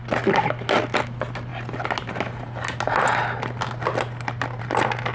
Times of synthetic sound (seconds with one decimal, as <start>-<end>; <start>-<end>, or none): none